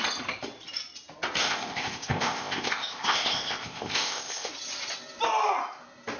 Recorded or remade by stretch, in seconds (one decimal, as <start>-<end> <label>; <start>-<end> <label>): 0.0-1.4 recorded; 1.4-4.5 remade; 4.5-6.2 recorded